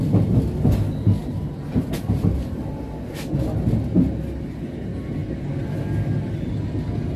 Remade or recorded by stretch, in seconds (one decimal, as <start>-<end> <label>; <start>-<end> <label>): 0.0-1.2 recorded; 1.2-2.6 remade; 2.6-7.2 recorded